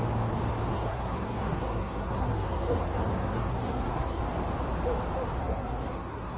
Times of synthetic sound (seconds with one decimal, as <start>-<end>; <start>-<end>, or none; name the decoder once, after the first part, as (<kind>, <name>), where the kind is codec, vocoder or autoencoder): 0.7-4.2 (codec, SNAC); 5.4-6.4